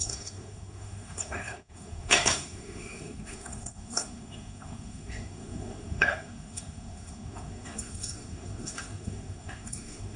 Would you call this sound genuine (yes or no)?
no